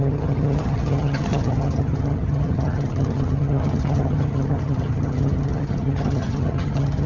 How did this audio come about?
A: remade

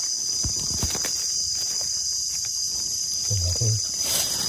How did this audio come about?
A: remade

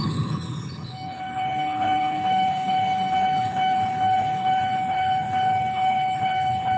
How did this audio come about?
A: remade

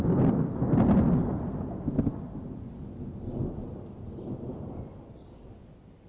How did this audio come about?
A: recorded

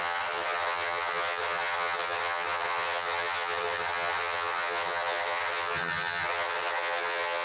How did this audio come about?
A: remade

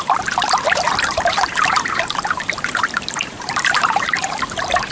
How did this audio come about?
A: remade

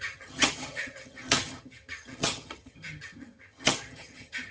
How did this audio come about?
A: remade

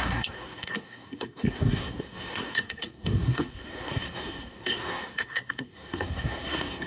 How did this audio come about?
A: remade